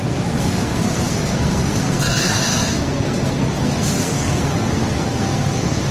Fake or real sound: fake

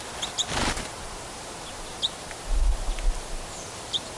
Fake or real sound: real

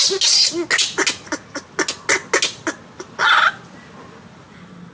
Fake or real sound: real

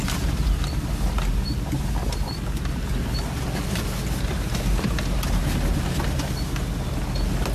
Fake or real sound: real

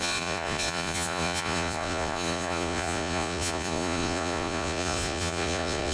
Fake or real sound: fake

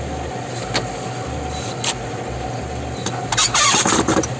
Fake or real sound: real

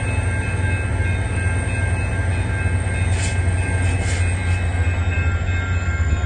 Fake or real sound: real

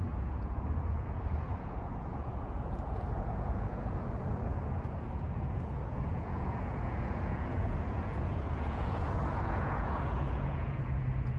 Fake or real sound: fake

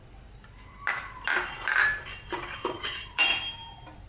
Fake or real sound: fake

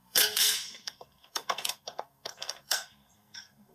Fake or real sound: fake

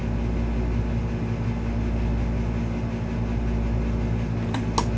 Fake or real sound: real